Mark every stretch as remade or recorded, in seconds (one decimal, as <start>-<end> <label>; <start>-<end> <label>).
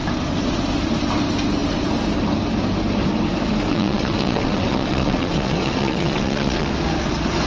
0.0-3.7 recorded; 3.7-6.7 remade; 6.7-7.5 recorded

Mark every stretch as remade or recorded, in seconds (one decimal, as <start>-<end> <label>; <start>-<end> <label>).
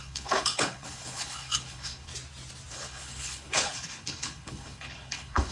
0.0-2.1 remade; 2.1-2.7 recorded; 2.7-5.5 remade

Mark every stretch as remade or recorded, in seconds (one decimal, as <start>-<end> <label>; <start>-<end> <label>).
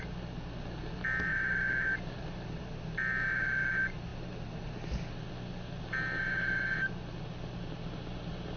0.0-8.6 recorded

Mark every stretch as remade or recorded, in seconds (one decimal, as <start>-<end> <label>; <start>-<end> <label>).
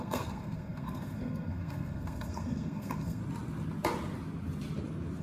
0.0-3.2 remade; 3.2-5.2 recorded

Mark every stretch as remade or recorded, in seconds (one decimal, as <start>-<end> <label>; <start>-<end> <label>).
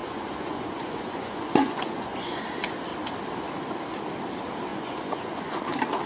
0.0-2.4 remade; 2.4-4.7 recorded; 4.7-5.6 remade; 5.6-6.1 recorded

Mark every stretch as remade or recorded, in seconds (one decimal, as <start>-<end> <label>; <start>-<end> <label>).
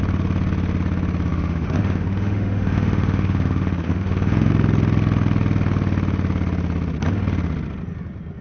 0.0-1.3 recorded; 1.3-4.5 remade; 4.5-8.4 recorded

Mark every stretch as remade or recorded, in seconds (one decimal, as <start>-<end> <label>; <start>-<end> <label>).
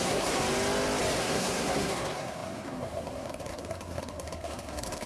0.0-0.4 remade; 0.4-1.2 recorded; 1.2-5.1 remade